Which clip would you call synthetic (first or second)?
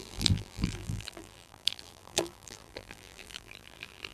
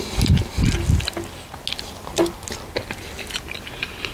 first